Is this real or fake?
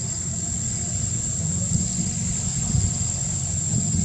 real